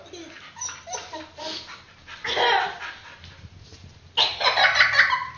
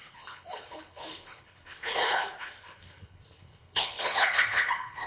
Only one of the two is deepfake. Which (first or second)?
second